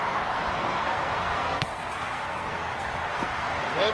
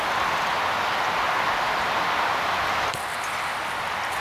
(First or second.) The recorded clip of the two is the second